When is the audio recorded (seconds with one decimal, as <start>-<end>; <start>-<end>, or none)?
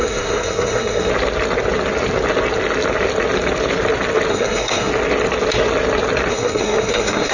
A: 1.1-4.3; 4.9-6.3